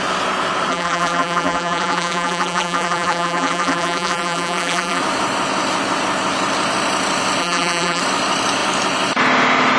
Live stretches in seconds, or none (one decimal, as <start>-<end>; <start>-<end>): 0.0-0.7; 5.0-7.4; 8.0-9.8